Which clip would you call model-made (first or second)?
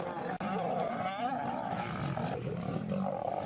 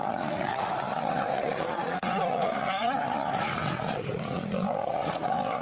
second